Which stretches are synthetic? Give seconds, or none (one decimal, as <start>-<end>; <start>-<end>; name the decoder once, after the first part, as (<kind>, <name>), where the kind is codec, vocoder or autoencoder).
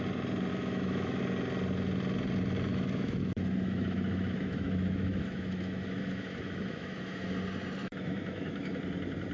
0.5-1.2 (autoencoder, DAC-VAE); 2.7-7.3; 7.8-8.8